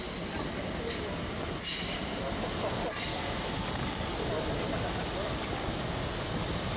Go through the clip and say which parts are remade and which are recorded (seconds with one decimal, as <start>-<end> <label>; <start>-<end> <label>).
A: 0.0-3.1 recorded; 3.1-4.3 remade; 4.3-6.8 recorded